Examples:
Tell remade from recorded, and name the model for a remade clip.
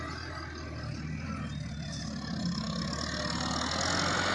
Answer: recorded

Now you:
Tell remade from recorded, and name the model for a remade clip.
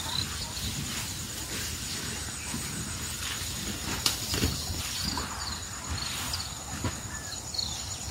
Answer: recorded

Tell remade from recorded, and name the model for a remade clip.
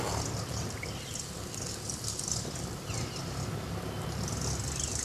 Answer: recorded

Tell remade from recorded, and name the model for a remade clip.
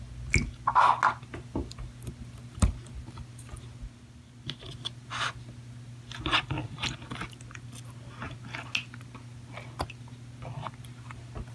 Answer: recorded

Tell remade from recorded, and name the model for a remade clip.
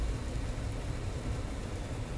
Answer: recorded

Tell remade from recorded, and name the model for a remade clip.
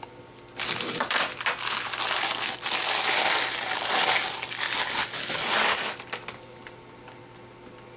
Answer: recorded